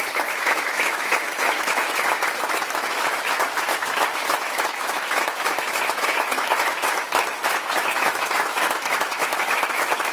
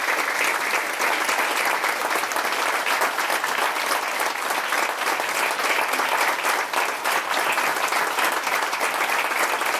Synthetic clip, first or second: first